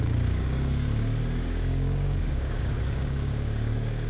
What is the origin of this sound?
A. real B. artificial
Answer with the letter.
B